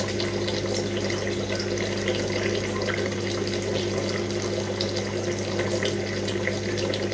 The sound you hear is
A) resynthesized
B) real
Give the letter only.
B